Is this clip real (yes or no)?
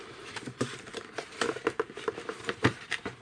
no